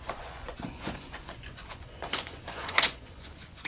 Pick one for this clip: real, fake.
fake